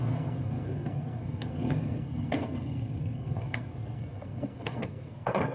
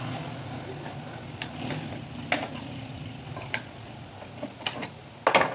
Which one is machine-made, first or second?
first